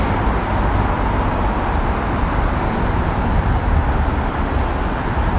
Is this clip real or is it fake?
real